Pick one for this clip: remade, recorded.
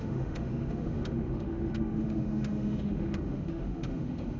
remade